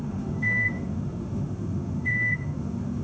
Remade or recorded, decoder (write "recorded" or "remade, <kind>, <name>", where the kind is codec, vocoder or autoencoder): remade, autoencoder, DAC-VAE